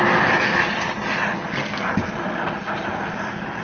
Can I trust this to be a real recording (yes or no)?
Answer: yes